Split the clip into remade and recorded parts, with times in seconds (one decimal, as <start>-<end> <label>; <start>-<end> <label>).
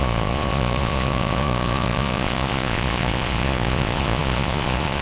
0.0-5.0 remade